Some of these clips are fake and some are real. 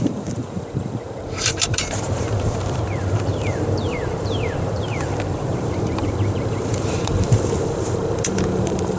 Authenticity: fake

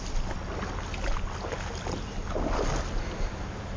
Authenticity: real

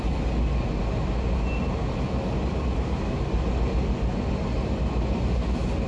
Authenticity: real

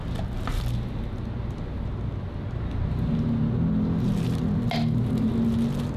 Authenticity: real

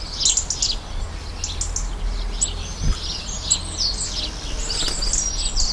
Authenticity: real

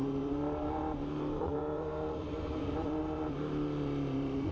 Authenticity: fake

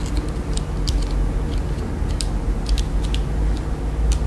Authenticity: real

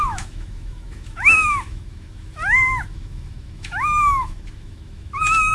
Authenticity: fake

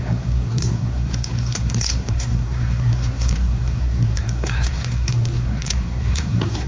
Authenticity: fake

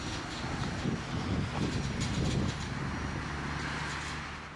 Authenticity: real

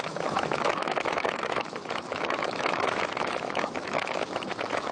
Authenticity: fake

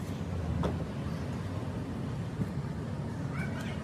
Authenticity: real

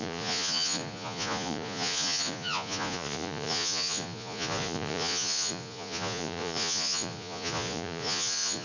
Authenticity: fake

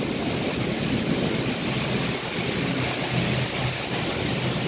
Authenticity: real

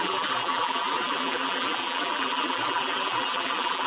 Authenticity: fake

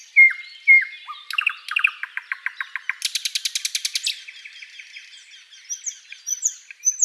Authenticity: real